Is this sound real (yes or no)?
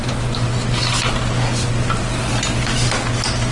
yes